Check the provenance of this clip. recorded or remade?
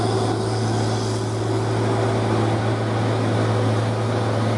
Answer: recorded